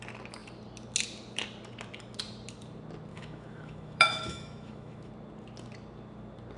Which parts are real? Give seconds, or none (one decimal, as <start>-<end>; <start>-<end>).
0.0-3.1; 5.1-6.6